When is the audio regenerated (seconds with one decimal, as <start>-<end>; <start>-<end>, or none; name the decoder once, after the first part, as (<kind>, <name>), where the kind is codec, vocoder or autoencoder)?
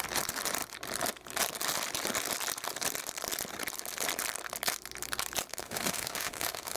5.5-6.8 (autoencoder, DAC-VAE)